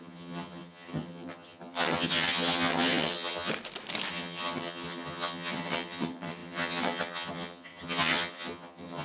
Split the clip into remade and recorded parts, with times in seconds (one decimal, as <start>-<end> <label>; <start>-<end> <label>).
0.0-3.5 remade; 3.5-4.1 recorded; 4.1-9.0 remade